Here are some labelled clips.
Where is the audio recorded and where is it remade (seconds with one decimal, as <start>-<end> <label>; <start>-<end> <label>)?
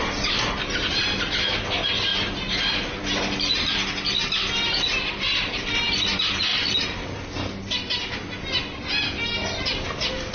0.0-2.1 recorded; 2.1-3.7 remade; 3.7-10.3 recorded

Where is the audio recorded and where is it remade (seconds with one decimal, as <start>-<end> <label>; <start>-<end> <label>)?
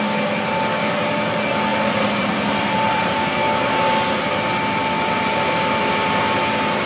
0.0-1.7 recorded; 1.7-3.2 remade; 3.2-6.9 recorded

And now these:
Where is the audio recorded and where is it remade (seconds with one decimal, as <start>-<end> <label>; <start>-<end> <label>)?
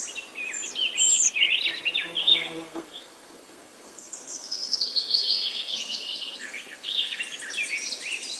0.0-2.2 recorded; 2.2-7.2 remade; 7.2-8.4 recorded